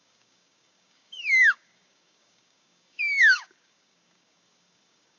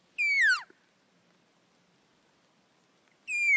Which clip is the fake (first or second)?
first